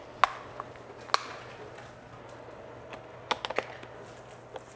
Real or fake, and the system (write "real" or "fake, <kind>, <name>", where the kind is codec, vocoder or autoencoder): real